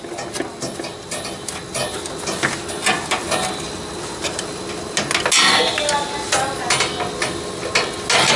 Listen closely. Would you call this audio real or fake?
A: real